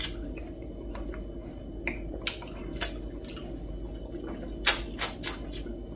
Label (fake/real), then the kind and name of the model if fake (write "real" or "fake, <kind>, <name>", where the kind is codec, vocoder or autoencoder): real